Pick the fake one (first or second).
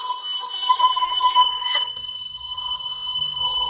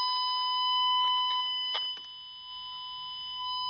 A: first